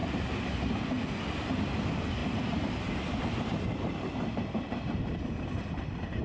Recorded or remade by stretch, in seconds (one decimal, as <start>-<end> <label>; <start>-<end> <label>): 0.0-0.7 remade; 0.7-2.2 recorded; 2.2-6.2 remade

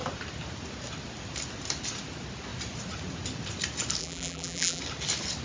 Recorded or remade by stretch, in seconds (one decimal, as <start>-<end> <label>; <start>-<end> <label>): 0.0-4.0 recorded; 4.0-4.8 remade; 4.8-5.4 recorded